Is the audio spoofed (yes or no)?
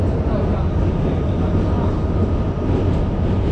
no